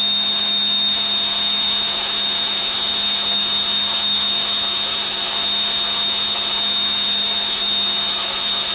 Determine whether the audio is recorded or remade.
remade